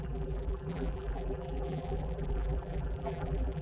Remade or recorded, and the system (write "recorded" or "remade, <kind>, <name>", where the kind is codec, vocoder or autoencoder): remade, vocoder, BigVGAN v2